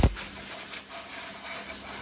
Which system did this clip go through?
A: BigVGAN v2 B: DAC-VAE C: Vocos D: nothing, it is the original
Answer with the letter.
D